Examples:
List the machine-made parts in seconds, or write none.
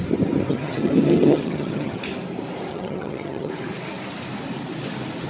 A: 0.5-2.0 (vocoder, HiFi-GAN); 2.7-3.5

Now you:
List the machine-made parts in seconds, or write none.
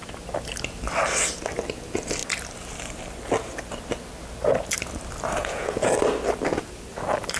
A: 5.4-5.9 (vocoder, Vocos)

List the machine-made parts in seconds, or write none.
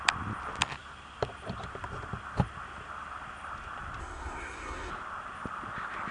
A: 4.0-4.9 (codec, SNAC)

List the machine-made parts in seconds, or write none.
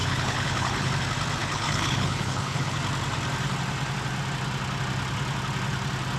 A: 0.0-0.9 (codec, HILCodec); 1.4-2.8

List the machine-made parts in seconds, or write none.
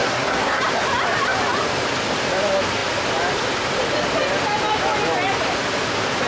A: 0.0-0.6 (codec, SNAC)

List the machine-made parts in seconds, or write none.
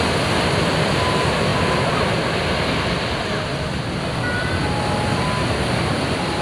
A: none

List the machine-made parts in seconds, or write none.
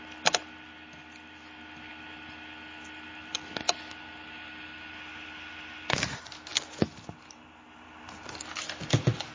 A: none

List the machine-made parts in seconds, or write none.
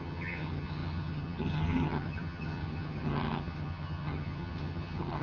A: 0.0-5.2 (vocoder, HiFi-GAN)